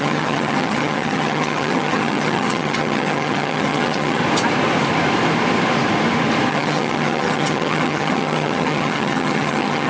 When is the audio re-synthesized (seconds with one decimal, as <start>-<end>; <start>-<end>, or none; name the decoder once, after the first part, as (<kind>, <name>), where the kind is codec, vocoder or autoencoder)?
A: 0.0-4.2 (vocoder, HiFi-GAN); 6.5-9.9

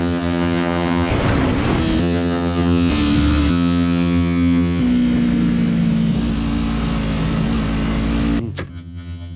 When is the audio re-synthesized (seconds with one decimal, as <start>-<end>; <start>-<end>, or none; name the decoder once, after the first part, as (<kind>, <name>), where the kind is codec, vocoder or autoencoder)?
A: 0.0-1.1 (vocoder, HiFi-GAN); 2.0-2.9; 3.5-4.8; 8.7-9.4

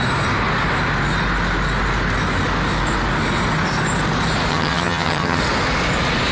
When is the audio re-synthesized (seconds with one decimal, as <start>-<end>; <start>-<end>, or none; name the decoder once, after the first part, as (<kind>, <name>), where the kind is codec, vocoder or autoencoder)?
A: 4.5-5.4 (vocoder, HiFi-GAN)

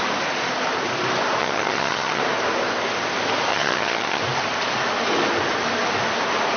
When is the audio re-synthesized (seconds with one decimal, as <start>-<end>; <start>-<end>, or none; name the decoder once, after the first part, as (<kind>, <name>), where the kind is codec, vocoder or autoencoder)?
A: 1.4-2.2 (vocoder, HiFi-GAN); 3.5-4.2

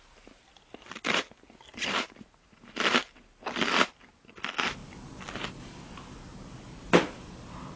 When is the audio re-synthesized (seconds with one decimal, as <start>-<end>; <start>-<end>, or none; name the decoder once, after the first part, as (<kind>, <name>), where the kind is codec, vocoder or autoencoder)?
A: none

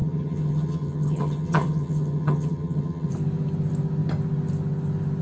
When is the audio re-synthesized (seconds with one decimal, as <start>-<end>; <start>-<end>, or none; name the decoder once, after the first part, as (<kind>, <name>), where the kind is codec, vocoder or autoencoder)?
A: 0.0-3.1 (vocoder, HiFi-GAN)